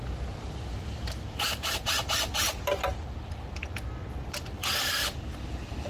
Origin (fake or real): real